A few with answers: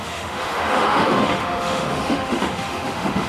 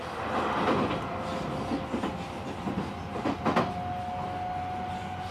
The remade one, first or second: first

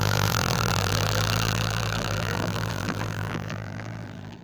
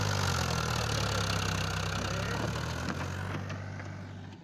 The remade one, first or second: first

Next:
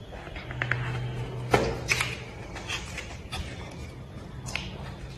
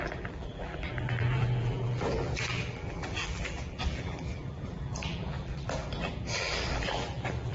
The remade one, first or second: second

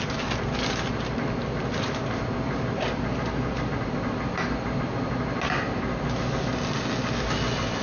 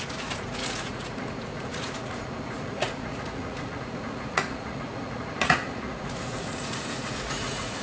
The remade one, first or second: second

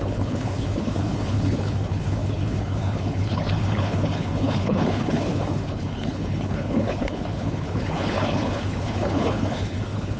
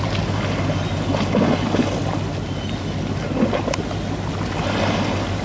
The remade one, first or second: first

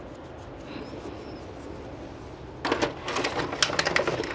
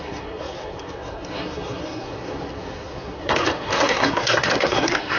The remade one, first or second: second